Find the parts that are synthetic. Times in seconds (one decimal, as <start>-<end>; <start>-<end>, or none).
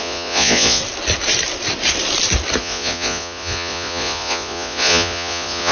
0.0-0.8; 2.6-5.7